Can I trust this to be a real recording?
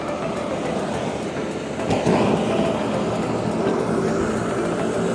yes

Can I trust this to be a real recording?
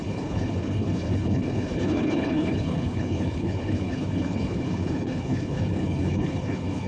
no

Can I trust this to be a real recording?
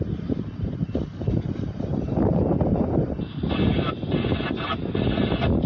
yes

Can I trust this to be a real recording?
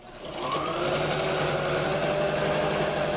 yes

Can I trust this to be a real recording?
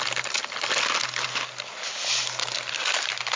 yes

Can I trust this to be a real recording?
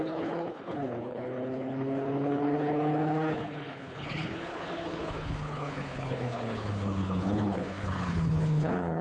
no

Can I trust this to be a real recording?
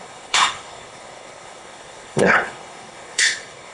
no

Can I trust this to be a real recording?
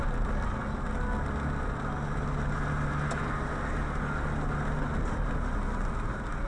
yes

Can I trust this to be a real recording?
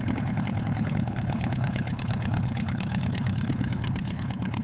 no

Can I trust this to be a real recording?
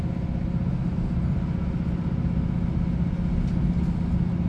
yes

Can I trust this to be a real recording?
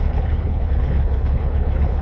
no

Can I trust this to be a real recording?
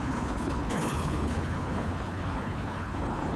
no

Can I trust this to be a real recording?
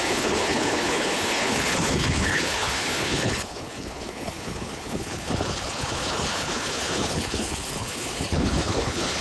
no